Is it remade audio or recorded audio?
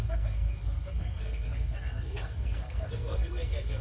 remade